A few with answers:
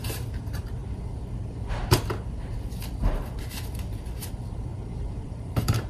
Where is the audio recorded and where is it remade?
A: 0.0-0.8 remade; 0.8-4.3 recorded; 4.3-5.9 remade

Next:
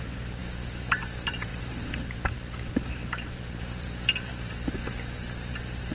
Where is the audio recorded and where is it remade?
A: 0.0-4.8 remade; 4.8-5.5 recorded; 5.5-5.9 remade